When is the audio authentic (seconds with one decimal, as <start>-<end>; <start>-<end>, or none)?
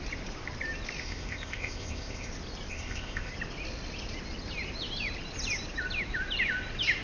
0.0-1.0; 2.3-2.7; 3.3-7.0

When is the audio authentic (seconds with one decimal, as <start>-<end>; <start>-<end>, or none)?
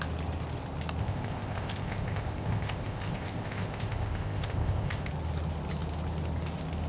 0.0-1.0; 5.1-6.9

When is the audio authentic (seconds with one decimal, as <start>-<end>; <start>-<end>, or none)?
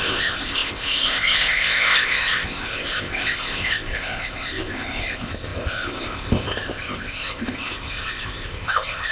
none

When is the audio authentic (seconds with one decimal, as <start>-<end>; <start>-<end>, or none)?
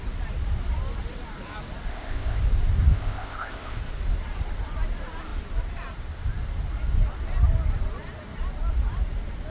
0.0-1.9; 2.4-2.9; 3.8-9.5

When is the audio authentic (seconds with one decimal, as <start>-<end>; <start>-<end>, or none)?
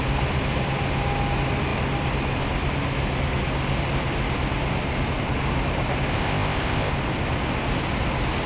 0.0-6.1; 6.9-8.5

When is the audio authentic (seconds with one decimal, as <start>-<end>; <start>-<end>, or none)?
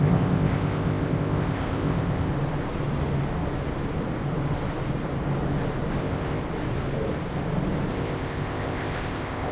2.3-6.0; 6.4-7.9